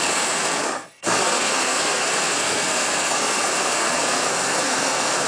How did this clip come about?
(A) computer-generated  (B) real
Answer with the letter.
A